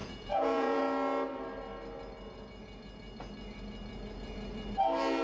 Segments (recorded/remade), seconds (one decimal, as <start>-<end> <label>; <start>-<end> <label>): 0.0-0.8 remade; 0.8-5.2 recorded